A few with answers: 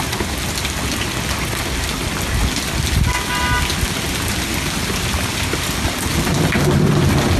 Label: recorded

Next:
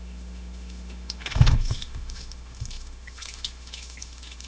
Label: remade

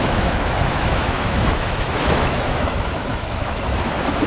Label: remade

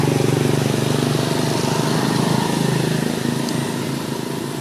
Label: recorded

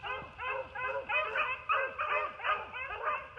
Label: recorded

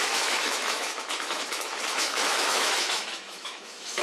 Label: remade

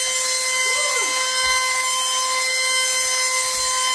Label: recorded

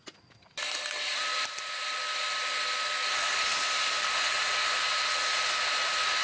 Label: recorded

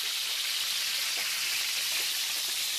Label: recorded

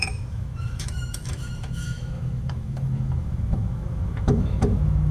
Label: remade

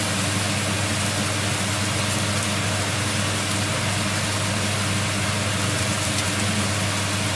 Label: recorded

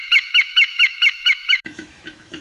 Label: remade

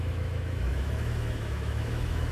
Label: remade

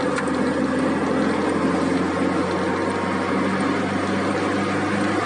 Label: recorded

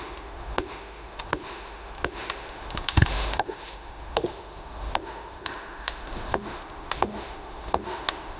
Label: remade